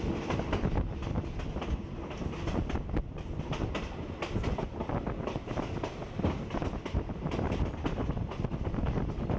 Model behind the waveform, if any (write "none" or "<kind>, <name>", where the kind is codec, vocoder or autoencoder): none